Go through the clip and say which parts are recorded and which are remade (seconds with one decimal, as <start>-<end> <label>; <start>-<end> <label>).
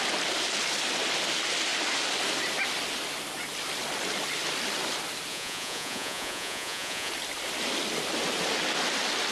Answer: 0.0-5.3 recorded; 5.3-7.1 remade; 7.1-9.3 recorded